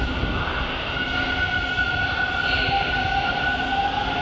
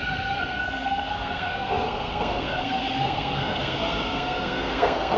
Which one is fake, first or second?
second